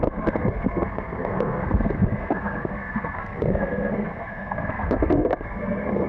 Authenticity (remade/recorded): remade